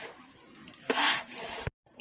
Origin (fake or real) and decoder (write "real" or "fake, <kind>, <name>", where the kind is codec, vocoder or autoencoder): real